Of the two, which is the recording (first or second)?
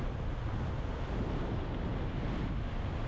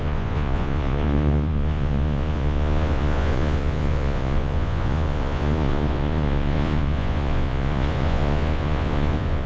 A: first